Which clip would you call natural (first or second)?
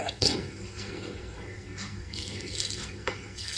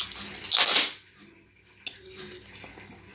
second